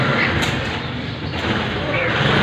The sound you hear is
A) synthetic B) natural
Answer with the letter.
A